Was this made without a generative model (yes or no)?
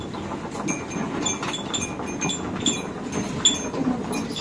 yes